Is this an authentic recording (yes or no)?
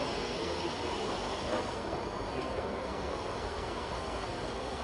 no